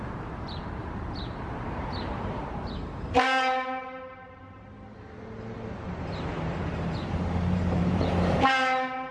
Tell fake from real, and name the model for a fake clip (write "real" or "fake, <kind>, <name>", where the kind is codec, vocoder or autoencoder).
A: fake, vocoder, BigVGAN v2